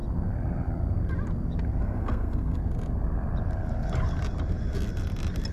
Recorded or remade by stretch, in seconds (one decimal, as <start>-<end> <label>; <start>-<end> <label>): 0.0-1.8 recorded; 1.8-2.6 remade; 2.6-5.5 recorded